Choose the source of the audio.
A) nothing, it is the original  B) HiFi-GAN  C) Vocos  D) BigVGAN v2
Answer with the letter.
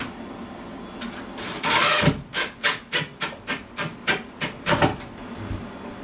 A